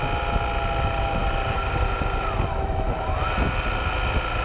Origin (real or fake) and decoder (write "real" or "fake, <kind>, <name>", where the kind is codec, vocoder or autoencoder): real